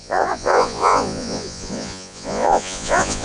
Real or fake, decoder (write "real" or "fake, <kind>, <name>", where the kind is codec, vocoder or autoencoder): fake, vocoder, Vocos